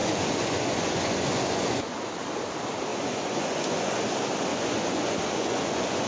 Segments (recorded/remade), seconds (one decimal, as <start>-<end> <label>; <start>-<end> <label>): 0.0-2.1 remade; 2.1-2.9 recorded; 2.9-4.0 remade; 4.0-4.5 recorded; 4.5-6.1 remade